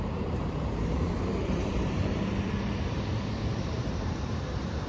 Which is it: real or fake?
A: fake